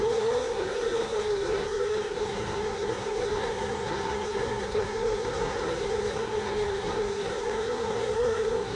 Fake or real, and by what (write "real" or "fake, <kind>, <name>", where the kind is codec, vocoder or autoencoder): fake, codec, SNAC